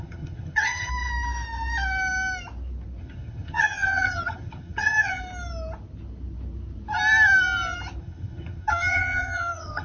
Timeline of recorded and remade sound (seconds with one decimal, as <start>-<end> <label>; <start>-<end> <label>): 0.0-0.9 remade; 0.9-3.0 recorded; 3.0-5.2 remade; 5.2-8.0 recorded; 8.0-9.8 remade